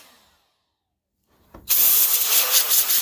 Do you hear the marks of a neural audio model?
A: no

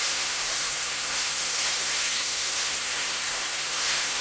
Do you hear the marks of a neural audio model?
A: yes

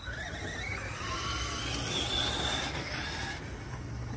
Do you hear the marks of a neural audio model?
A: no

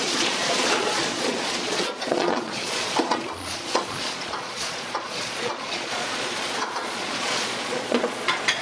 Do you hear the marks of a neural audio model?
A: yes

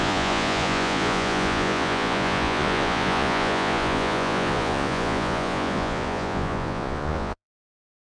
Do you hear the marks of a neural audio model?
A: yes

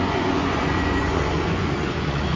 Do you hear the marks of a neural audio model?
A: yes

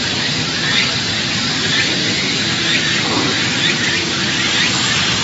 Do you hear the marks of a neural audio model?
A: no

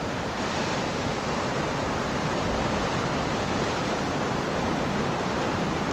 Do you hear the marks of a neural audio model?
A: yes